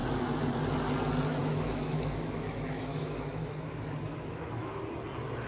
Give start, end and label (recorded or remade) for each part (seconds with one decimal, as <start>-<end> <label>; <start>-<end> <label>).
0.0-1.5 recorded; 1.5-4.8 remade; 4.8-5.5 recorded